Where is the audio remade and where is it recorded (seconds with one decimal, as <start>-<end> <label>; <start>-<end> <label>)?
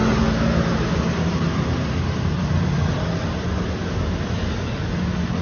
0.0-5.4 recorded